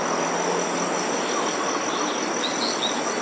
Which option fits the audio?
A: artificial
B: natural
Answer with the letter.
B